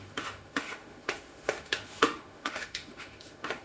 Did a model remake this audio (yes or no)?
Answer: yes